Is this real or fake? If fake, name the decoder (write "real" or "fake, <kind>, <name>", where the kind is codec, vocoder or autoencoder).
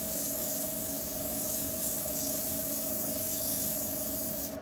fake, codec, DAC